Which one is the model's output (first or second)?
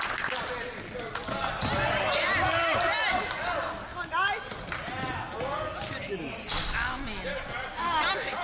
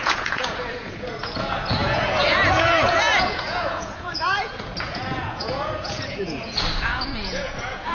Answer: second